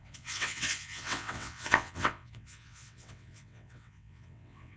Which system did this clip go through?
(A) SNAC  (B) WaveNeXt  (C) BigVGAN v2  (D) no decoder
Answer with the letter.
B